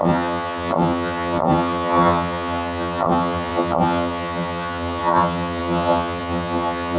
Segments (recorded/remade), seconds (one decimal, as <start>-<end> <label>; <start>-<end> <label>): 0.0-7.0 remade